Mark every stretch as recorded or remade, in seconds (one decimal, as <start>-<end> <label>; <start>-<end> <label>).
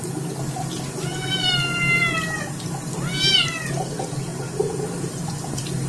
0.0-5.9 recorded